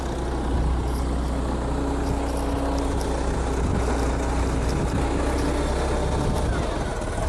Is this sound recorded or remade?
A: recorded